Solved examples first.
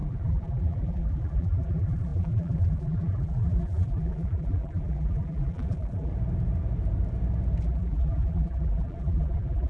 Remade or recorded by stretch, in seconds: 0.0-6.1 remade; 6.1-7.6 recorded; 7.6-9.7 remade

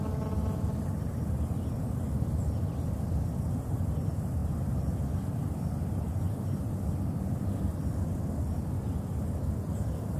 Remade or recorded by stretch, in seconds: 0.0-10.2 recorded

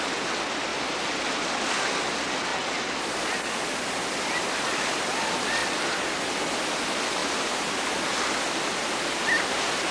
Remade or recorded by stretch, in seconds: 0.0-5.6 recorded; 5.6-6.2 remade; 6.2-9.9 recorded

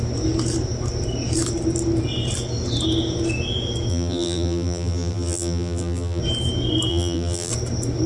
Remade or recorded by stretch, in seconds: 0.0-3.9 recorded; 3.9-6.2 remade; 6.2-6.9 recorded; 6.9-7.5 remade; 7.5-8.1 recorded